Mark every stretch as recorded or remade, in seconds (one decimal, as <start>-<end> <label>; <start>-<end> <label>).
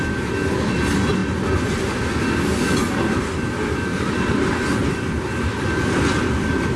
0.0-6.8 recorded